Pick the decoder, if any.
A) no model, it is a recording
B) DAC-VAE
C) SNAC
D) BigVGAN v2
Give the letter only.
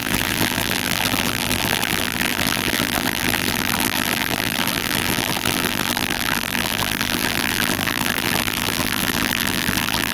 D